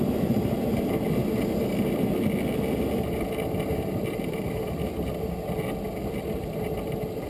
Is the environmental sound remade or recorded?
recorded